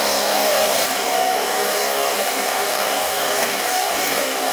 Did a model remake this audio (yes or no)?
yes